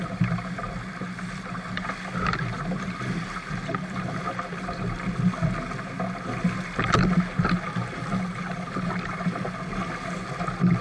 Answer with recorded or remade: recorded